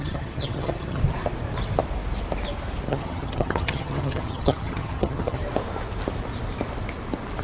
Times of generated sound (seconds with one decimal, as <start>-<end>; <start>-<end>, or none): 0.0-1.0; 2.9-5.4